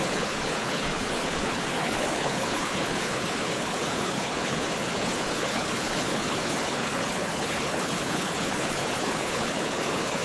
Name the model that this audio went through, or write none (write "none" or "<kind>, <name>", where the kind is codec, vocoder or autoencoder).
codec, HILCodec